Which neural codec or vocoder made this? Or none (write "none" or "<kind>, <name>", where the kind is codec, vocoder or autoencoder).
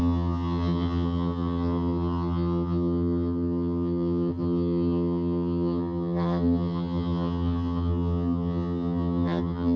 vocoder, HiFi-GAN